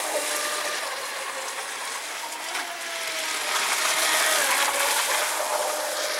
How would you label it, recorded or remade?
recorded